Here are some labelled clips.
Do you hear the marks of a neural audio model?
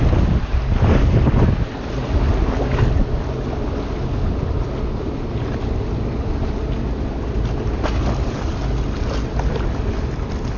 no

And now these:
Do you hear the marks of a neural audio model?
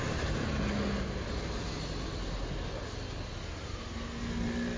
no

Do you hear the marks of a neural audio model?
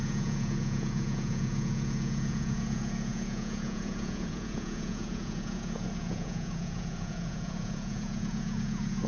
yes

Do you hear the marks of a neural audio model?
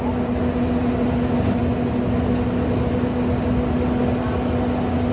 no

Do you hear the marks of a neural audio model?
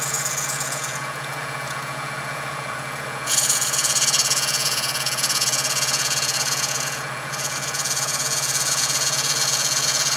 yes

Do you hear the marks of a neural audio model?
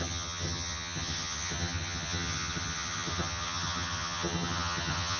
yes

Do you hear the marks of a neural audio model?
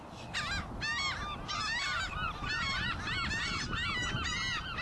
no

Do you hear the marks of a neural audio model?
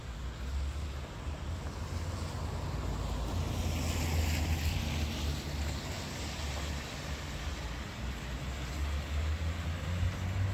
no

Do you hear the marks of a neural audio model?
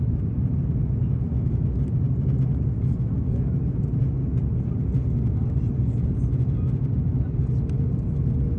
no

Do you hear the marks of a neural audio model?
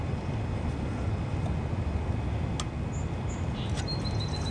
no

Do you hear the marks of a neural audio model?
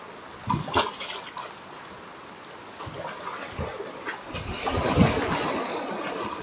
no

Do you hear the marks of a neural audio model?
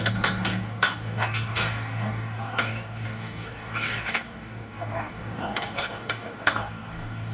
yes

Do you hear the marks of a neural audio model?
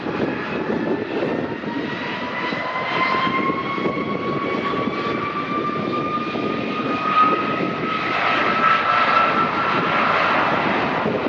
no